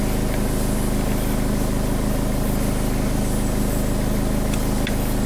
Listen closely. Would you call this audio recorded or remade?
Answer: recorded